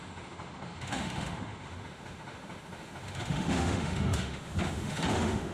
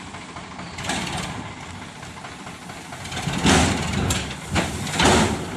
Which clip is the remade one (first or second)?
first